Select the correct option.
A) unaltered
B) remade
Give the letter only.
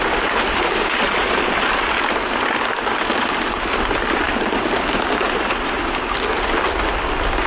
A